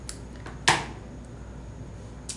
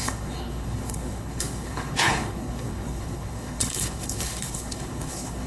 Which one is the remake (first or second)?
second